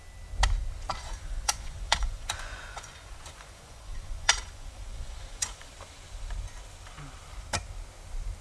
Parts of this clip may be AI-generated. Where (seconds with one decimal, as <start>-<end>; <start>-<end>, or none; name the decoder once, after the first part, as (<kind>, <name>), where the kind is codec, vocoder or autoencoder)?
0.9-5.7 (vocoder, Vocos)